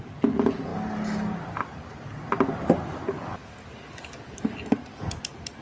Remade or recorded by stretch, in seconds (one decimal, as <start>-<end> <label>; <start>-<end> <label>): 0.0-5.6 recorded